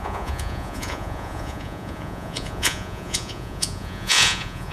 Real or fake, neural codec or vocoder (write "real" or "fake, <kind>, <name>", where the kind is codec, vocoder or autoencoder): fake, vocoder, Vocos